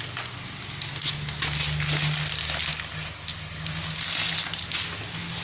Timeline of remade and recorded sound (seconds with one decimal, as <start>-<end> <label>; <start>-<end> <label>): 0.0-5.4 recorded